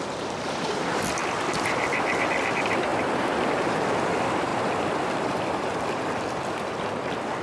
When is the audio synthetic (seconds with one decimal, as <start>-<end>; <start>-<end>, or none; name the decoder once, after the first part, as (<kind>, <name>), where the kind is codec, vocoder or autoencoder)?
0.0-2.9 (vocoder, BigVGAN v2); 3.6-7.4

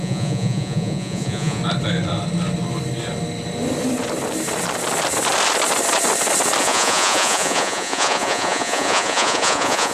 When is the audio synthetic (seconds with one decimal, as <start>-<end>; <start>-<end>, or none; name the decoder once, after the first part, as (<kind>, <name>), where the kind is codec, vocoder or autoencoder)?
0.0-1.6 (vocoder, Vocos); 6.6-9.9

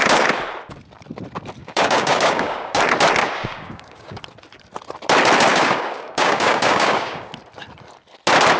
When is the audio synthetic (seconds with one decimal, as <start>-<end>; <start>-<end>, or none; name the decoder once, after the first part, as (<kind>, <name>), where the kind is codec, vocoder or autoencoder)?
1.6-2.8 (codec, DAC); 3.2-4.2; 5.5-7.3

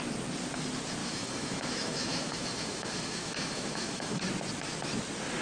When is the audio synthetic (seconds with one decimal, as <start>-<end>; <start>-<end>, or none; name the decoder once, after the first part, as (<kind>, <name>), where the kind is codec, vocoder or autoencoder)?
1.0-4.2 (autoencoder, DAC-VAE)

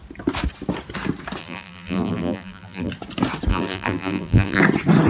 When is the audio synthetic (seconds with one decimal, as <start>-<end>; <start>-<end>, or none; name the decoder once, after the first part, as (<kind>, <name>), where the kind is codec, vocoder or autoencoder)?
1.4-2.9 (vocoder, BigVGAN v2); 3.5-4.6

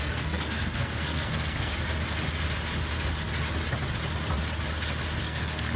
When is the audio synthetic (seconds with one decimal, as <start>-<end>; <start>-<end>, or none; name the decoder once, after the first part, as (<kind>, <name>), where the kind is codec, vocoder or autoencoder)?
0.0-1.7 (codec, SNAC); 5.2-5.8